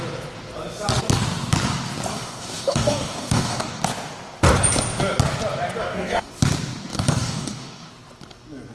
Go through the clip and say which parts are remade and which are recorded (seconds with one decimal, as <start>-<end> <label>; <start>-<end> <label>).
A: 0.0-2.1 recorded; 2.1-3.8 remade; 3.8-5.8 recorded; 5.8-6.3 remade; 6.3-6.9 recorded; 6.9-7.9 remade; 7.9-8.7 recorded